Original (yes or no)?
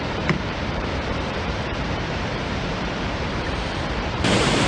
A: no